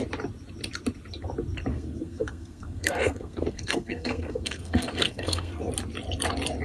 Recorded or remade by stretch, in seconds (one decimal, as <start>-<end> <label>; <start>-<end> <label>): 0.0-1.7 recorded; 1.7-5.7 remade; 5.7-6.6 recorded